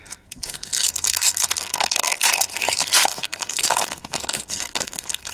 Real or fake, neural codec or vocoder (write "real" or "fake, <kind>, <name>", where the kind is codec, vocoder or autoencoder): fake, codec, SNAC